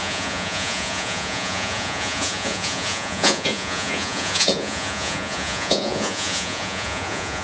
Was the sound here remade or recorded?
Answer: remade